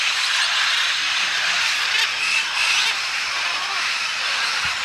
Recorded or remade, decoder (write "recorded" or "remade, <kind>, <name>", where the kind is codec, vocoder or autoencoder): recorded